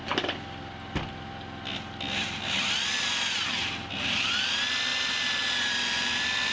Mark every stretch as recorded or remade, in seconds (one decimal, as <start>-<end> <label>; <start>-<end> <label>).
0.0-6.5 recorded